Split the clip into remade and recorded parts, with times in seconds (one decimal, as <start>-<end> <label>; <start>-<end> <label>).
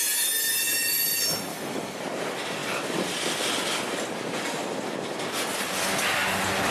0.0-1.5 recorded; 1.5-2.0 remade; 2.0-6.7 recorded